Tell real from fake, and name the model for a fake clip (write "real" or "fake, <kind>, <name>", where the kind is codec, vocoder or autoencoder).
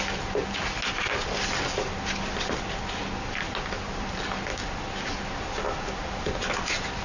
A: real